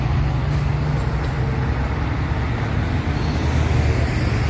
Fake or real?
real